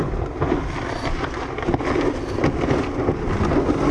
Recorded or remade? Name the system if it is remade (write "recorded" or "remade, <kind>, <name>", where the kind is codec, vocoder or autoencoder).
recorded